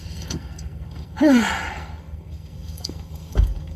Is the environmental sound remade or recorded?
remade